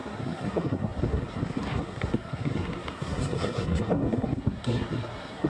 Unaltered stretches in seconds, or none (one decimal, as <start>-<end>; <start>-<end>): none